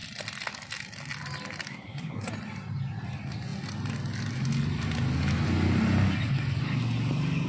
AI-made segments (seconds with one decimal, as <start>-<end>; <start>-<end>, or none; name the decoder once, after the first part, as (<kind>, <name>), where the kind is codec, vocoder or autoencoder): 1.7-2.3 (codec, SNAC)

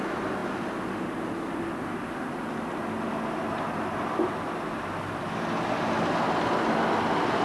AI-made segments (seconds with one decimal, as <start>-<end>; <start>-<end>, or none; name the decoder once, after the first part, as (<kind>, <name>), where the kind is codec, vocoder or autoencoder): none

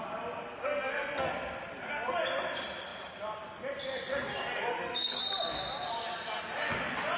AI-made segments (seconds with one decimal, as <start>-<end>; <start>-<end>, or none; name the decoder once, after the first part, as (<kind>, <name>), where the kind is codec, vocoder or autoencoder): 0.6-1.3 (codec, SNAC); 4.7-5.2

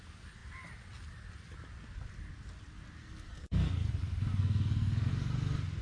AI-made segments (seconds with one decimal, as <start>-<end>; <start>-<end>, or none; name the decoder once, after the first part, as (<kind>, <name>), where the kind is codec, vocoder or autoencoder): 3.0-3.9 (codec, SNAC); 4.3-5.1

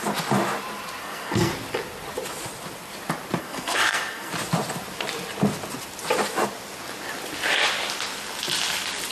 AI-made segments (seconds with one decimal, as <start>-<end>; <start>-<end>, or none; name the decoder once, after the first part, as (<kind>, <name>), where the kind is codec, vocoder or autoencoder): 1.0-1.5 (codec, SNAC); 3.4-4.3